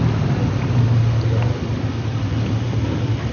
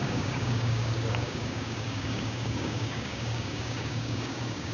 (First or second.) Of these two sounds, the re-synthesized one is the second